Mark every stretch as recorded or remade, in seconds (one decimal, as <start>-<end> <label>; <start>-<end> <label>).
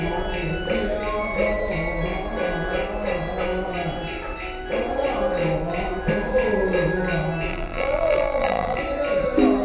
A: 0.0-7.5 recorded; 7.5-8.8 remade; 8.8-9.6 recorded